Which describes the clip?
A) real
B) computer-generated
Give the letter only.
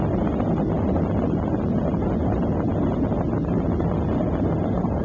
A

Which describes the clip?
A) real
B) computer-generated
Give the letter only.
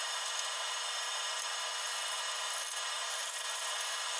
A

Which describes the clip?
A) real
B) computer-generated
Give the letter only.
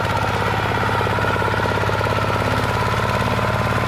A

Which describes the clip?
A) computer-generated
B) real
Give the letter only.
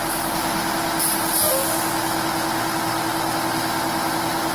B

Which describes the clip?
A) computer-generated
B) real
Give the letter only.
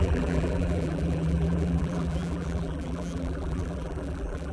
A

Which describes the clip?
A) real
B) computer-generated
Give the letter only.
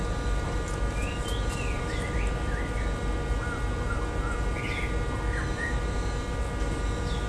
A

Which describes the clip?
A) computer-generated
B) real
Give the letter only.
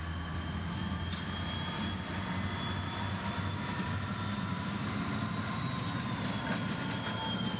B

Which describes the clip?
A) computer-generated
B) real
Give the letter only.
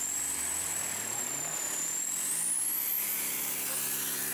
B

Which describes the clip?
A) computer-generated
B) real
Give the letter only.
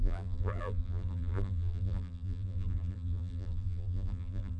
A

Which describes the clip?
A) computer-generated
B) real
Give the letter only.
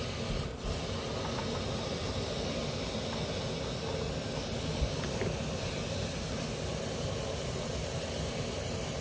B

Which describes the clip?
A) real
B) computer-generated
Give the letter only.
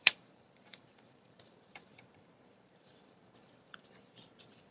B